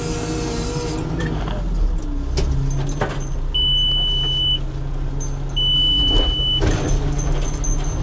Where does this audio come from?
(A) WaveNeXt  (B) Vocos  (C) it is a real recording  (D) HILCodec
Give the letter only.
C